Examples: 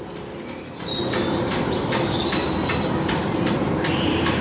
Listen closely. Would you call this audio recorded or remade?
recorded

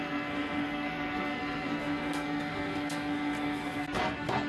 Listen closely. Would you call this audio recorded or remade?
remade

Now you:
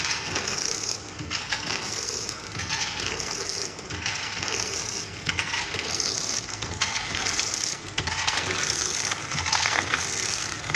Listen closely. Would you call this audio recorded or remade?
remade